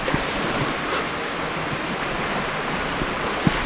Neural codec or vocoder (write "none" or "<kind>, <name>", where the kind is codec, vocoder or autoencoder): none